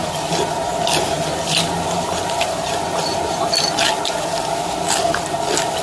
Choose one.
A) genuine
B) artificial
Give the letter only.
A